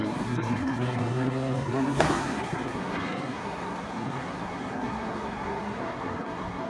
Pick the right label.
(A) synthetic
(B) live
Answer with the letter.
A